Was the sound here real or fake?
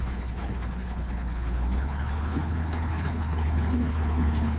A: fake